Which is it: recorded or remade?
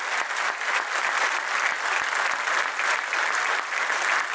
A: recorded